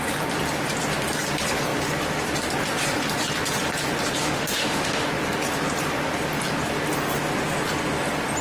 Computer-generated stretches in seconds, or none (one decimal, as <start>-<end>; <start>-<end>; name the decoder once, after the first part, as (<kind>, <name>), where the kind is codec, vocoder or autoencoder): 4.2-5.1 (autoencoder, DAC-VAE)